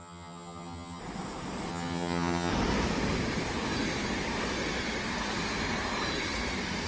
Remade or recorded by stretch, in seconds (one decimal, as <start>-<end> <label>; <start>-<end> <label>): 0.0-1.0 remade; 1.0-1.7 recorded; 1.7-2.5 remade; 2.5-6.9 recorded